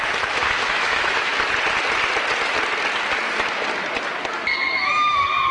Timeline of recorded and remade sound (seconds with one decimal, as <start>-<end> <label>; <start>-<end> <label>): 0.0-1.3 remade; 1.3-4.6 recorded; 4.6-5.5 remade

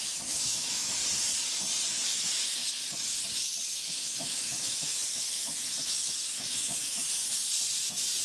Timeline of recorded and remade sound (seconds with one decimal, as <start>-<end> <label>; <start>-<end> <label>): 0.0-1.0 remade; 1.0-1.9 recorded; 1.9-2.6 remade; 2.6-3.7 recorded; 3.7-7.2 remade; 7.2-8.2 recorded